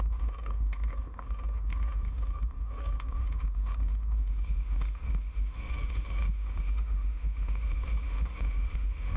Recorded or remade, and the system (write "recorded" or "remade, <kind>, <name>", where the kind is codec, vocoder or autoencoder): remade, autoencoder, DAC-VAE